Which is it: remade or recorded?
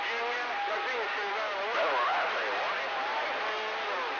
recorded